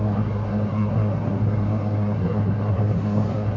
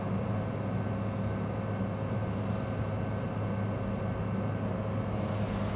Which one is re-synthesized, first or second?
first